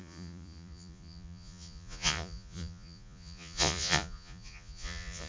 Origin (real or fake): fake